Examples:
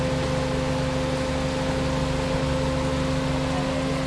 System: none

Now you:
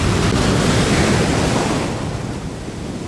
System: none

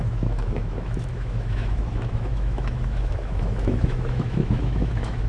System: autoencoder, DAC-VAE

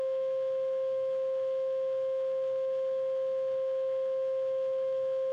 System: autoencoder, DAC-VAE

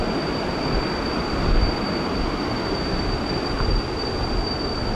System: none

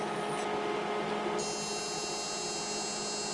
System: none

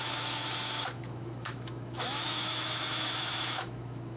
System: autoencoder, DAC-VAE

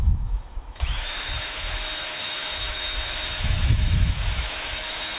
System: autoencoder, DAC-VAE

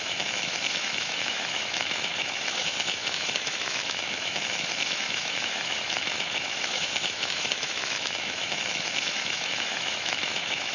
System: autoencoder, DAC-VAE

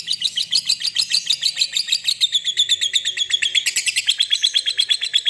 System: none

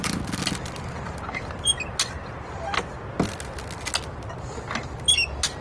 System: none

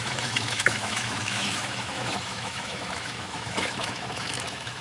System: autoencoder, DAC-VAE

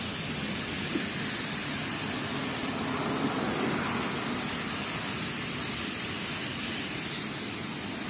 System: none